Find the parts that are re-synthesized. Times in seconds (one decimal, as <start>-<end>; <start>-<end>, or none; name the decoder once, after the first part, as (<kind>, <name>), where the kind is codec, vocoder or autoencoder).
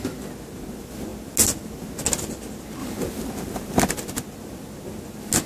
2.8-3.8 (vocoder, BigVGAN v2)